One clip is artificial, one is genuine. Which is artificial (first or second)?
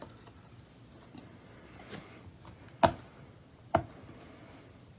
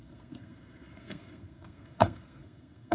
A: second